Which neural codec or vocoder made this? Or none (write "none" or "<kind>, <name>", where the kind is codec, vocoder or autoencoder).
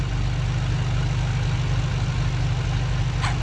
none